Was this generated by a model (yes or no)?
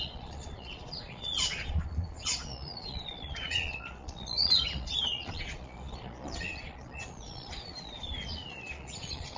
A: yes